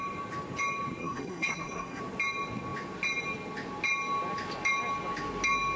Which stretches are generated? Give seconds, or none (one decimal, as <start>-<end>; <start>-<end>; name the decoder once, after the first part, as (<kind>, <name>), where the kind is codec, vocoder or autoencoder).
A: 1.0-2.0 (codec, SNAC)